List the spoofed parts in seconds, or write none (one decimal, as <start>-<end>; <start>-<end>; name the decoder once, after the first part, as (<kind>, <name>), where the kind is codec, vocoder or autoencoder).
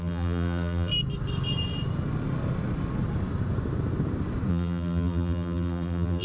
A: 0.0-0.9 (vocoder, BigVGAN v2); 4.5-6.2